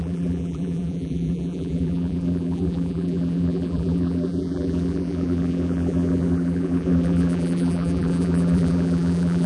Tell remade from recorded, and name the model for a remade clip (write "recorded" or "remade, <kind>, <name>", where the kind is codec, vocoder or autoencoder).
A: remade, vocoder, BigVGAN v2